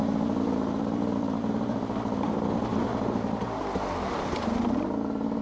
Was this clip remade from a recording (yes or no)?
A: no